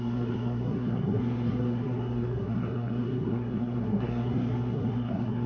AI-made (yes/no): yes